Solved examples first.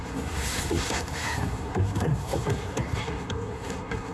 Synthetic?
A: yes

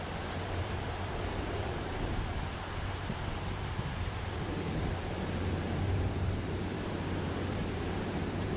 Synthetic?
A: yes